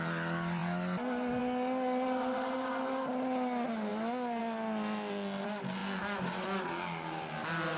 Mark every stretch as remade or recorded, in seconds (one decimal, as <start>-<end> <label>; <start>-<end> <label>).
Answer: 0.0-7.8 recorded